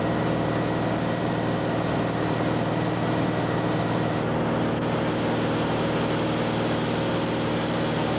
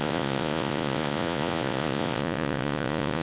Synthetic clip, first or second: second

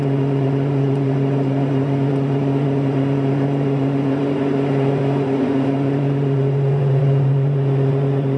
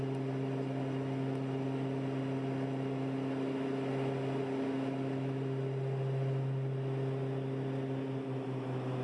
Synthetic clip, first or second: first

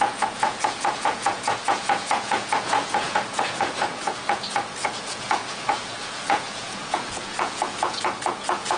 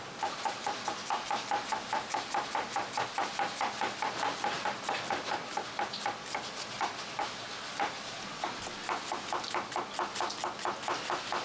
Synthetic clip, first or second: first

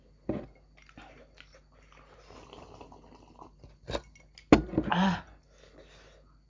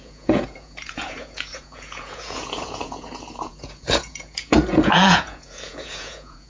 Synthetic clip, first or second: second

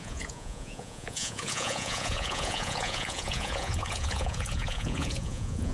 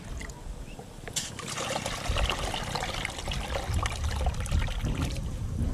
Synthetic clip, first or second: first